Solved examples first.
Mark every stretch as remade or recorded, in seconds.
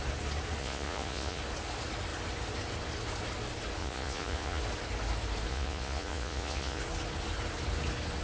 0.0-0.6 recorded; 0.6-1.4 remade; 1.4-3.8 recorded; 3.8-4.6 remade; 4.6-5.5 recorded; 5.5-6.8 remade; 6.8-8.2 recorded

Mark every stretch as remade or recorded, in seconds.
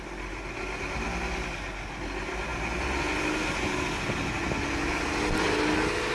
0.0-6.1 recorded